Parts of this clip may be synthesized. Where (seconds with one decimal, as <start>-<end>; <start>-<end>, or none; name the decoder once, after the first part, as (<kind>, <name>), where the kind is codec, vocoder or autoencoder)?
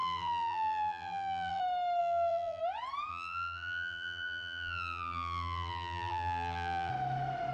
0.0-1.6 (vocoder, BigVGAN v2); 2.0-2.6; 3.1-6.9